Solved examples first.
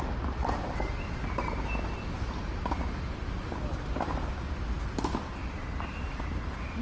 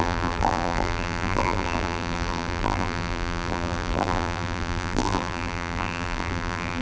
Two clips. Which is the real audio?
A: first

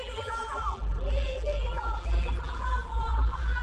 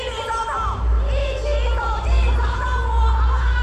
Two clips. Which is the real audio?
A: second